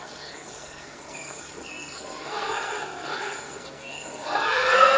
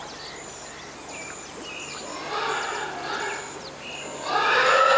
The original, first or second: second